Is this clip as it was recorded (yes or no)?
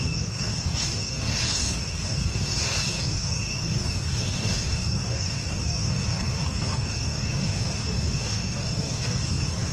no